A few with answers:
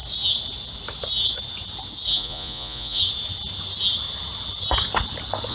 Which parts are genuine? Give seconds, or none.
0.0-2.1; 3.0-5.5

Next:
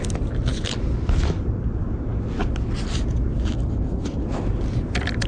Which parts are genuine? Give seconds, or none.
0.0-5.3

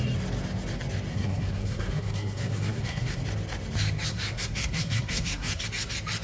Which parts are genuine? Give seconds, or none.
0.0-1.1; 3.2-4.1; 5.6-6.2

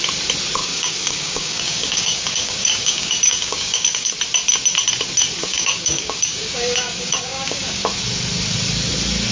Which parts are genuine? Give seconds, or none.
0.0-0.6; 4.1-5.5; 7.8-9.3

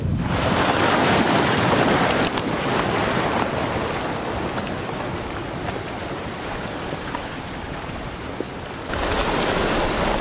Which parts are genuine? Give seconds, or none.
0.0-3.3; 4.0-5.4; 8.3-10.2

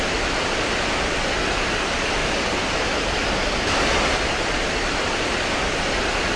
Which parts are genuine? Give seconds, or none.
0.0-6.4

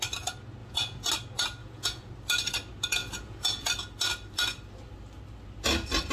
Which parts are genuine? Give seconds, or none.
0.0-0.6; 1.1-1.6; 2.1-3.0; 3.7-6.1

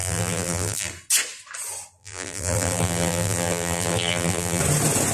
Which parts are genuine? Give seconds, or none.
0.9-2.0; 4.6-5.1